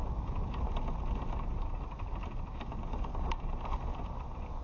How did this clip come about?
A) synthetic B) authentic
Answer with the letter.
B